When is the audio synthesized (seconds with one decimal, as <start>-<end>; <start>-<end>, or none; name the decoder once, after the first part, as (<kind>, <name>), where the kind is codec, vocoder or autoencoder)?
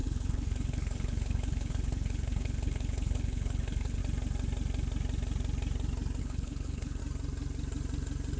0.0-4.0 (codec, HILCodec); 6.2-7.0